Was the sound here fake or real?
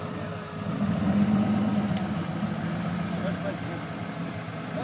real